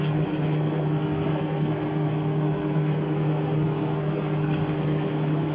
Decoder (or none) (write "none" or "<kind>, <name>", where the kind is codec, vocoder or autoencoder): codec, SNAC